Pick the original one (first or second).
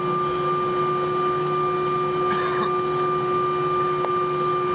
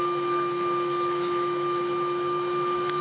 first